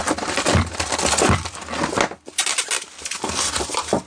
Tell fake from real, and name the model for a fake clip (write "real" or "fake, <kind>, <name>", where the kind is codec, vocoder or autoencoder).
real